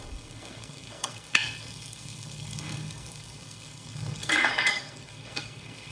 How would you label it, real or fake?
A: fake